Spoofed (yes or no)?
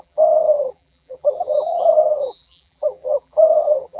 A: yes